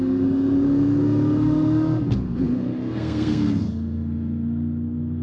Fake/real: fake